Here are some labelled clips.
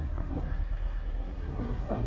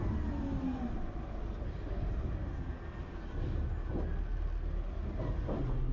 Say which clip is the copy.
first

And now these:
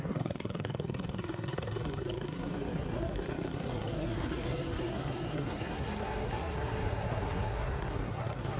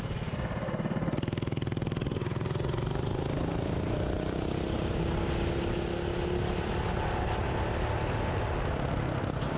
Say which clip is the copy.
first